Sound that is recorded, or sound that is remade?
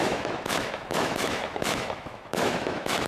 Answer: remade